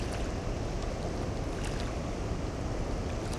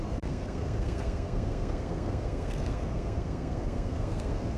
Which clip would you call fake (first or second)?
second